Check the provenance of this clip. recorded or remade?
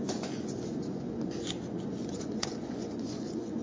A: remade